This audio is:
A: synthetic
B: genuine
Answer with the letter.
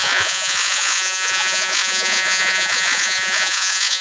A